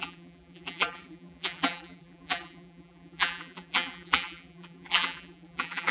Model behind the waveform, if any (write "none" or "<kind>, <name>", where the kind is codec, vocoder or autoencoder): vocoder, BigVGAN v2